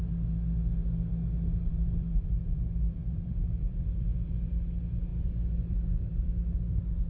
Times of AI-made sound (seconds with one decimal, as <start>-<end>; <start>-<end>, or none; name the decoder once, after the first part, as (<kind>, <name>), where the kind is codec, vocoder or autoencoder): 1.7-4.3 (vocoder, BigVGAN v2); 5.1-6.5